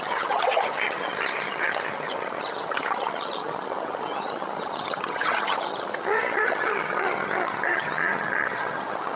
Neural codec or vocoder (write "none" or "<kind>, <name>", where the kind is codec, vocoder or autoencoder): vocoder, HiFi-GAN